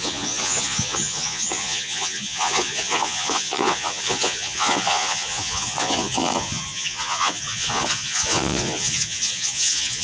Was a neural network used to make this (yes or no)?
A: yes